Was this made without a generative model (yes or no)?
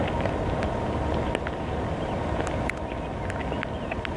yes